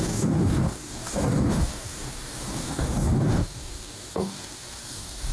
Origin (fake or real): fake